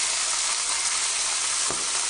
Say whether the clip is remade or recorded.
remade